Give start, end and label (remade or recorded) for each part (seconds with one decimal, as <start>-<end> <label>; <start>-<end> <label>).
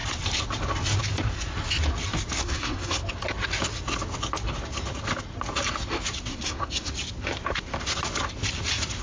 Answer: 0.0-2.4 recorded; 2.4-3.0 remade; 3.0-6.3 recorded; 6.3-6.9 remade; 6.9-9.0 recorded